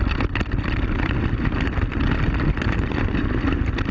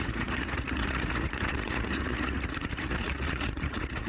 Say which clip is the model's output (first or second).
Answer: second